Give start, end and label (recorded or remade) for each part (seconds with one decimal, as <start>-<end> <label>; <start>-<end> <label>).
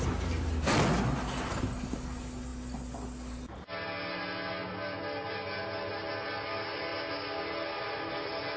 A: 0.0-8.6 recorded